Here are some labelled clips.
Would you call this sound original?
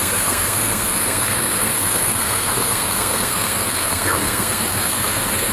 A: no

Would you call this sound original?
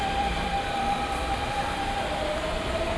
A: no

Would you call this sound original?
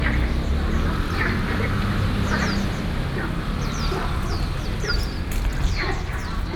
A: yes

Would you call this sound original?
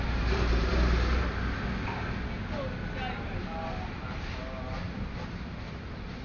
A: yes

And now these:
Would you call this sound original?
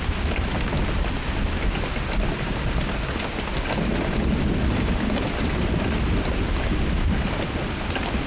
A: yes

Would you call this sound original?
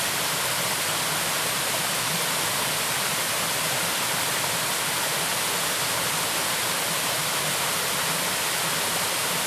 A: yes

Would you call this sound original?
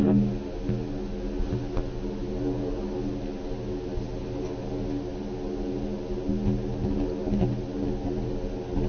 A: yes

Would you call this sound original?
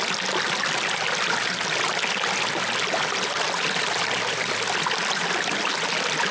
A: yes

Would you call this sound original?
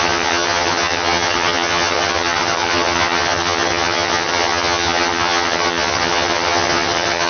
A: no